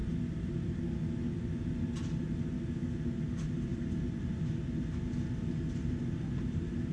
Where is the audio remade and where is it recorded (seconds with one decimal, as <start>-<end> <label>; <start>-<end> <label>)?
0.0-6.9 recorded